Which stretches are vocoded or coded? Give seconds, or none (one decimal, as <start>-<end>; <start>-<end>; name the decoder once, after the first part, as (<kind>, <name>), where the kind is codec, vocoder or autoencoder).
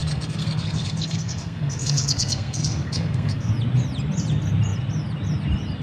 0.0-3.5 (codec, SNAC)